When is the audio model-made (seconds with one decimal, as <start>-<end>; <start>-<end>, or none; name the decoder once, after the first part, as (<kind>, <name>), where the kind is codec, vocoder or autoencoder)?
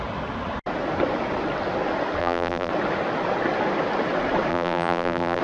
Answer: 2.2-2.7 (vocoder, BigVGAN v2); 4.5-5.4